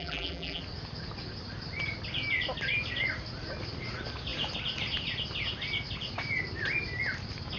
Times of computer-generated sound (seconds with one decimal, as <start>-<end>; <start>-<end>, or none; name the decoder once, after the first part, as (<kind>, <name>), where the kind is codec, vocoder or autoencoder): 0.0-0.6 (vocoder, BigVGAN v2)

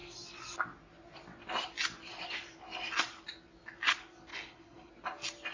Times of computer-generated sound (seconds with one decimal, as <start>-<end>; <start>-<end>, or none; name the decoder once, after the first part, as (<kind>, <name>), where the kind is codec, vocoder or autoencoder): 4.3-4.9 (codec, HILCodec)

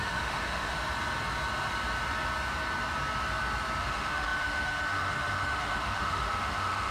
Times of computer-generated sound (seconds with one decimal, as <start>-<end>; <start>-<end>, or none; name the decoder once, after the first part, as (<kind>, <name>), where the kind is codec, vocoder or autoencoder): 0.0-0.8 (autoencoder, DAC-VAE); 3.8-6.9

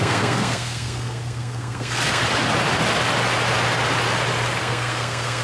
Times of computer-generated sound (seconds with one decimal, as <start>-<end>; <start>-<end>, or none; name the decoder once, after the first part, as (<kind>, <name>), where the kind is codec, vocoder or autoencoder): 0.0-2.2 (codec, SNAC); 4.6-5.4